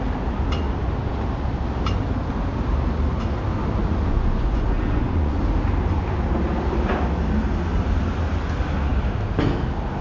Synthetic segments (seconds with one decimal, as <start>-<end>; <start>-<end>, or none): 3.8-5.4